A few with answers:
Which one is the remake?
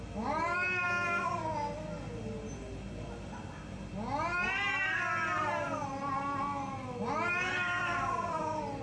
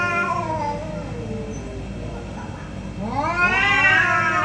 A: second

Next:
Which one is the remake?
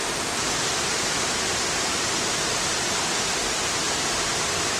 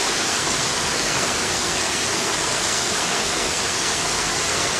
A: second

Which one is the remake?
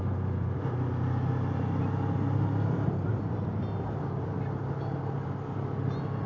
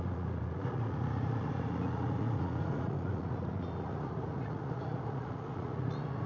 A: second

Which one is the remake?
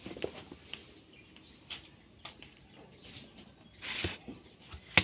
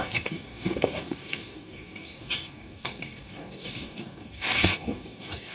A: second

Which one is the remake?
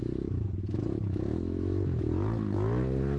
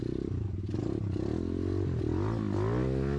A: first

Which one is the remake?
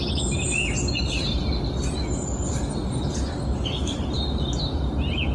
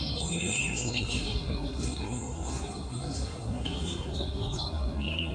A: second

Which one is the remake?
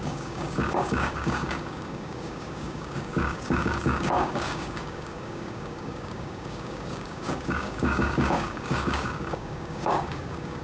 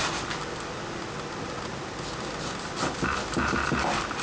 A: first